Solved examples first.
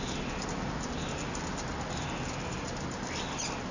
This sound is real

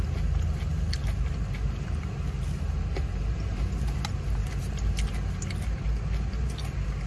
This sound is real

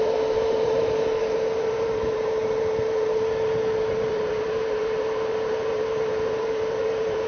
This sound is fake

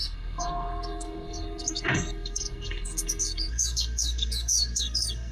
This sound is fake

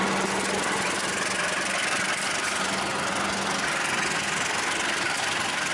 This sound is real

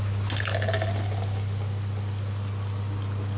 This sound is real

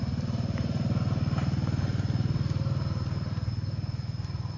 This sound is real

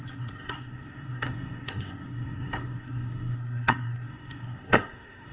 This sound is fake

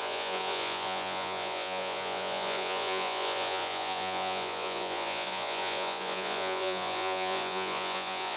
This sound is fake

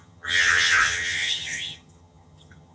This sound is fake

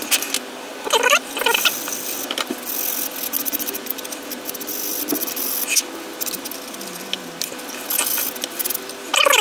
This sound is real